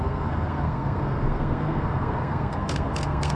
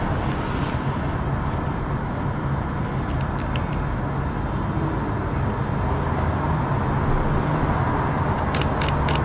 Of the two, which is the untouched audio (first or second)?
second